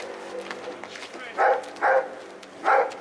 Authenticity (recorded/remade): recorded